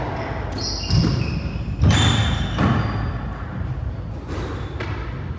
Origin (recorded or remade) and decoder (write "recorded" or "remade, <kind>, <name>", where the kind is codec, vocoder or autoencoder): recorded